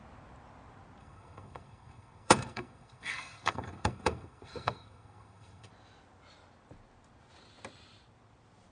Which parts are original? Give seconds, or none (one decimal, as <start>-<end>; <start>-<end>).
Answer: 0.0-1.0; 5.7-8.7